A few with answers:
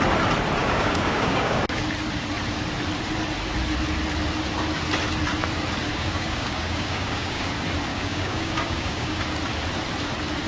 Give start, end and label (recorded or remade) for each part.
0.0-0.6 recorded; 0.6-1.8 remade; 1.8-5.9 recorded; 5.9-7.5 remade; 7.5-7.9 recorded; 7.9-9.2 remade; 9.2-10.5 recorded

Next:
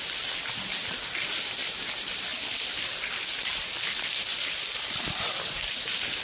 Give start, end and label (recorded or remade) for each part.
0.0-6.2 recorded